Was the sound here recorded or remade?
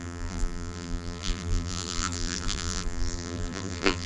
remade